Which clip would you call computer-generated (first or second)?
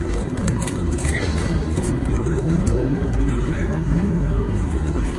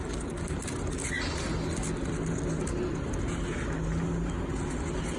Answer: first